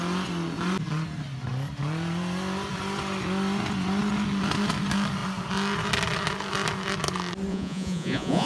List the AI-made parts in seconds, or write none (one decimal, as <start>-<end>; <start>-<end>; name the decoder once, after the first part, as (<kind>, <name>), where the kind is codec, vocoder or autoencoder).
7.5-8.5 (vocoder, Vocos)

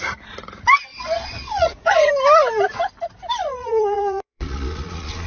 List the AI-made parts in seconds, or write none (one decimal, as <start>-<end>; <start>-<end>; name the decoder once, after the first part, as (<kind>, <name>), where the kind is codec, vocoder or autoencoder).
0.9-2.1 (vocoder, Vocos); 3.4-5.3

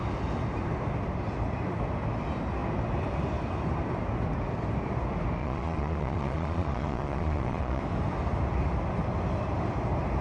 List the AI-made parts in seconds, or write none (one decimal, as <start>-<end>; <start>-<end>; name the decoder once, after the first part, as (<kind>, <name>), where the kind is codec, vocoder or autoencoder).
5.4-7.8 (vocoder, Vocos)

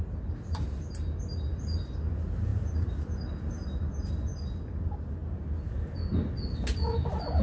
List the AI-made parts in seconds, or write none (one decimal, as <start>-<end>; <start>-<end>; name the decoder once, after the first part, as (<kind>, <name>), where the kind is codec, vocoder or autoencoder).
none

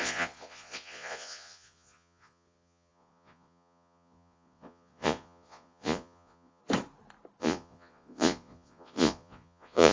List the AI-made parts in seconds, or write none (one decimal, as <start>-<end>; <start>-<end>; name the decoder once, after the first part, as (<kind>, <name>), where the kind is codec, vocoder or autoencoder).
0.0-6.6 (vocoder, Vocos); 7.4-9.9